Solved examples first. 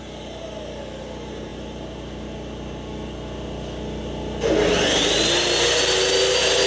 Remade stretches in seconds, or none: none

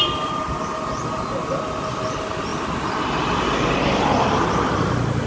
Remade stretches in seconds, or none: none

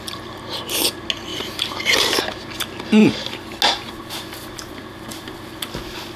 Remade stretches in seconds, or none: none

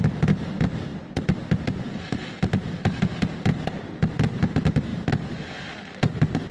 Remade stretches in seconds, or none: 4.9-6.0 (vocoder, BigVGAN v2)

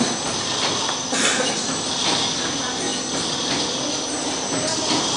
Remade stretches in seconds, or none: none

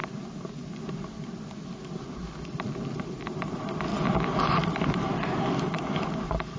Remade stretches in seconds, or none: 1.7-3.9 (vocoder, BigVGAN v2); 4.5-6.6